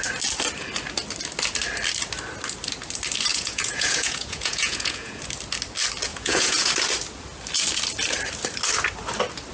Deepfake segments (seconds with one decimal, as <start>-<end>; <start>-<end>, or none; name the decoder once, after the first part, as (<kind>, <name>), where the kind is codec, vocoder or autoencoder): 3.3-5.2 (vocoder, Vocos); 6.1-6.7